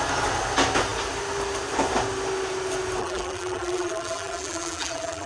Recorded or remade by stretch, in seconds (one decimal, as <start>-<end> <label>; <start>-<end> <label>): 0.0-3.0 recorded; 3.0-5.3 remade